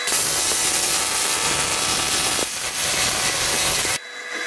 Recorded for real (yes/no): yes